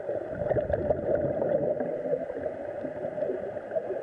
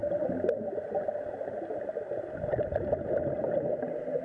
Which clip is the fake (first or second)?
first